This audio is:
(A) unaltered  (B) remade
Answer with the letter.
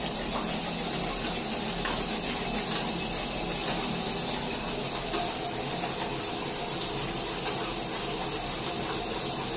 A